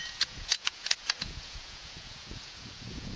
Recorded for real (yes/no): no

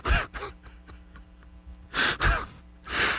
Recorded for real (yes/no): yes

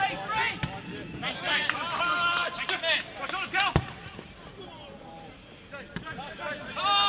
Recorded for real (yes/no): yes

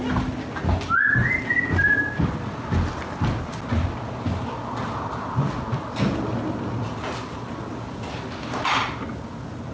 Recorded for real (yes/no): yes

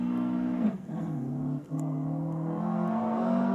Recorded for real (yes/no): no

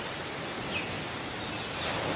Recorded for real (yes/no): yes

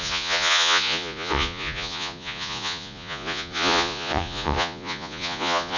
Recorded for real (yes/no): no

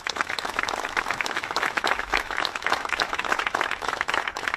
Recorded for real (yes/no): no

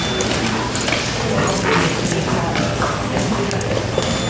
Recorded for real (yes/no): yes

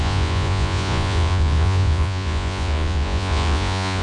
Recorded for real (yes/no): no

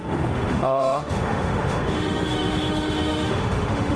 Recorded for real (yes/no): no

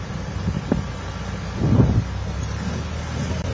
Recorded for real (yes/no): yes